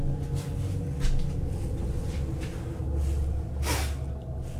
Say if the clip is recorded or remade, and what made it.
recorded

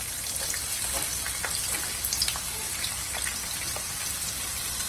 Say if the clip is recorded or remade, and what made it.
recorded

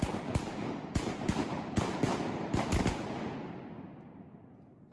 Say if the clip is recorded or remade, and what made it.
recorded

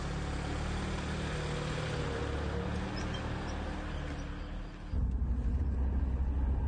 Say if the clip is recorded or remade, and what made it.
recorded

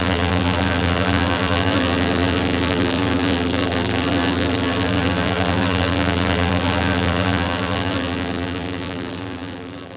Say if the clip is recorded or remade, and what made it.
remade, vocoder, BigVGAN v2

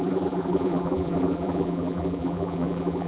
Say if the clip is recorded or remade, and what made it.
remade, vocoder, BigVGAN v2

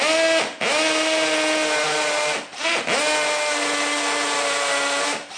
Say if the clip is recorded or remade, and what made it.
recorded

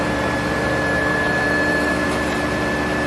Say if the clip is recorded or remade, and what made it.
remade, vocoder, BigVGAN v2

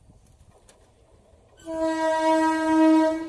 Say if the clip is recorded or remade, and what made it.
recorded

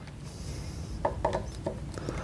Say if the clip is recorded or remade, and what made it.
recorded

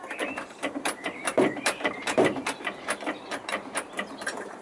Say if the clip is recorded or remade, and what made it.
remade, vocoder, BigVGAN v2